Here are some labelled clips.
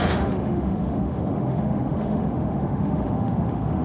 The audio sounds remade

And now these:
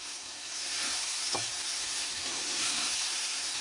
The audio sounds remade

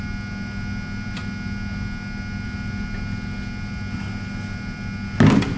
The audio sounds recorded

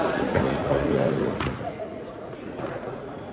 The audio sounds remade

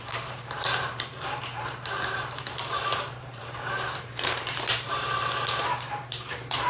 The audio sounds remade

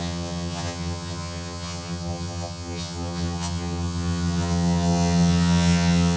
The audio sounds remade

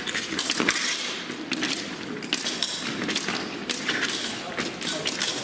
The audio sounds recorded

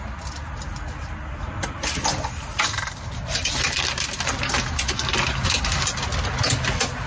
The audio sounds recorded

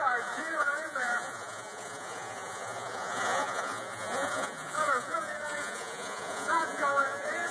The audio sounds remade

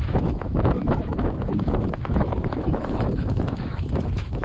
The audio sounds remade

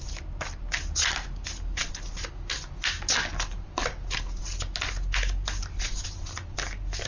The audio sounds recorded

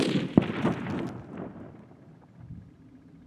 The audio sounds recorded